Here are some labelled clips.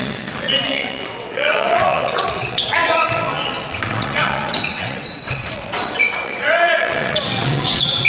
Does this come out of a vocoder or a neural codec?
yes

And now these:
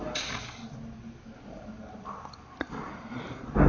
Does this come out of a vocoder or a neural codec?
no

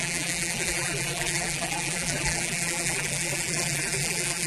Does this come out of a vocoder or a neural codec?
yes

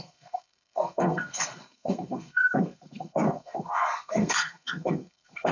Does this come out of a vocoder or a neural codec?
yes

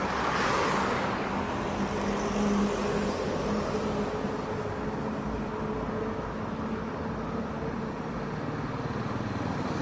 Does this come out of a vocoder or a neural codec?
no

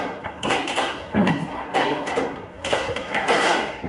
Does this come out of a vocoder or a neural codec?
yes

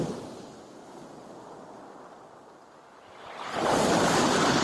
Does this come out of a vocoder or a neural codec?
no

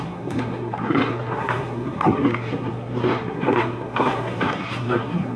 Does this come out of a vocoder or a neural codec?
yes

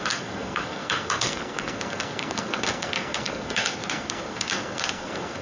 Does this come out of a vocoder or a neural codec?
yes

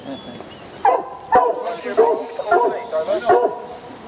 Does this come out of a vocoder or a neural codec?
no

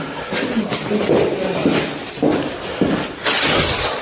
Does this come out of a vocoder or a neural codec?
no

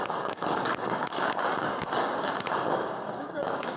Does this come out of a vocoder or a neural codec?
yes